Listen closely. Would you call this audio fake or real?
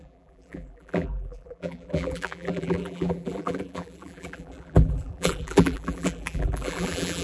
fake